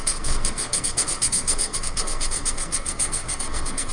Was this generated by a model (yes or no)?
yes